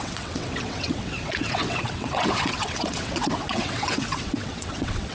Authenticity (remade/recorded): remade